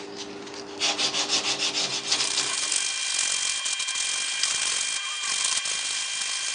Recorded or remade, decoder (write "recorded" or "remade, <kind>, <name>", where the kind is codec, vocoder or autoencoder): recorded